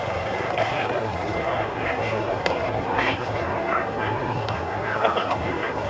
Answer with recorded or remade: remade